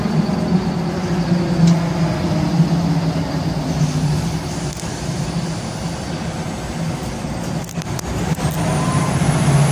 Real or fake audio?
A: real